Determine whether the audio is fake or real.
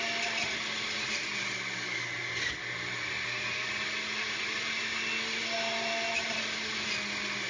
real